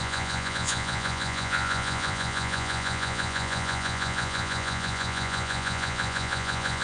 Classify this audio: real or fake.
fake